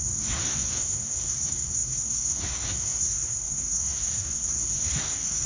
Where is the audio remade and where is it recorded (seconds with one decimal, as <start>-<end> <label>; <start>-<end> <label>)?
0.0-5.5 remade